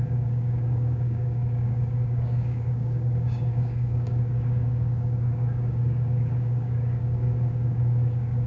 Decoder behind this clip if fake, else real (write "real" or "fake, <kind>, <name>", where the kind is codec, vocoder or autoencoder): fake, codec, DAC